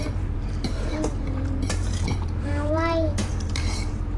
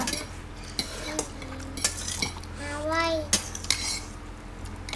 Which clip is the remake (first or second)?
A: first